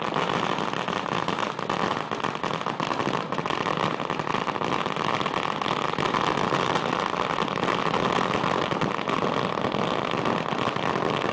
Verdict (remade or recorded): recorded